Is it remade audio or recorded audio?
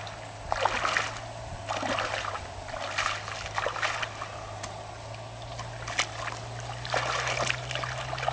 recorded